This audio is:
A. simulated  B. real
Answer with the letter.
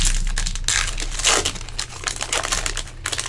B